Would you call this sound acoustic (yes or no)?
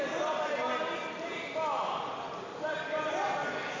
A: yes